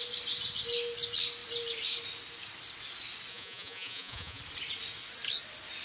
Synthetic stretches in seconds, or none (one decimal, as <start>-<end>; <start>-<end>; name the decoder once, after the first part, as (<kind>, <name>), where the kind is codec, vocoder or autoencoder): 3.3-4.4 (vocoder, Vocos)

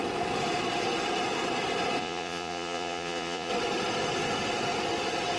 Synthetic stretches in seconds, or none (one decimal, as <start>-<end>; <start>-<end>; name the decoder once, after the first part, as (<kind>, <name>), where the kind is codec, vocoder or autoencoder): 2.0-3.5 (vocoder, Vocos)

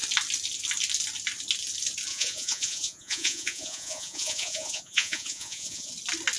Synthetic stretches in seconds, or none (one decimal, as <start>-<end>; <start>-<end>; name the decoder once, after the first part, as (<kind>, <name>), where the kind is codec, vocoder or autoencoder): 2.1-5.9 (vocoder, Vocos)